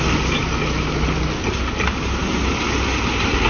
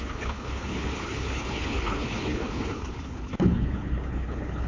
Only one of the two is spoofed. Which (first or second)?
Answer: second